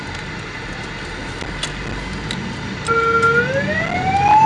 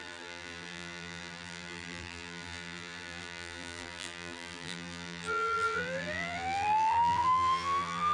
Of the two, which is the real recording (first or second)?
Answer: first